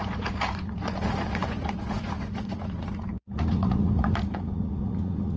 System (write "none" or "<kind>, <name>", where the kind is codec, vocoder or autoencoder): vocoder, Vocos